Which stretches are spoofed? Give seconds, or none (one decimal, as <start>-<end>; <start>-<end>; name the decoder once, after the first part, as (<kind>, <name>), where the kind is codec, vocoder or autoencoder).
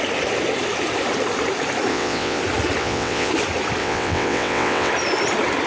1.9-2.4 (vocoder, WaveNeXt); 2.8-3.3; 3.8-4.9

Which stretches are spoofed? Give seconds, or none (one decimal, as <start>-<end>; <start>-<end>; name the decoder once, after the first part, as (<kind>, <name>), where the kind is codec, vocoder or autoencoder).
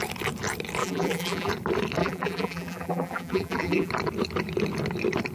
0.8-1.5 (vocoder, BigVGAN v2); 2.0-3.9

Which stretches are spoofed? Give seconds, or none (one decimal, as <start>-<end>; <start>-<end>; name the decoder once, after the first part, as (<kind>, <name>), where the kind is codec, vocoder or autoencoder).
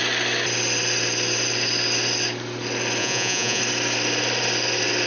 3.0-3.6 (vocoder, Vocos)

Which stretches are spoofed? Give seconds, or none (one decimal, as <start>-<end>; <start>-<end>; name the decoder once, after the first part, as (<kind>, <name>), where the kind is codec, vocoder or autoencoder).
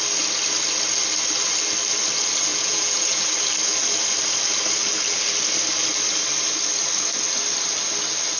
2.5-3.2 (vocoder, Vocos)